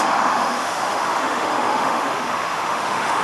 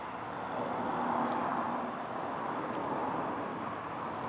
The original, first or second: second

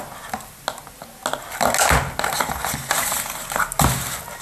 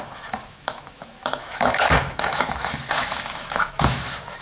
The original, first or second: first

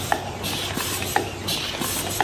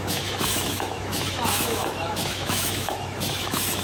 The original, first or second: first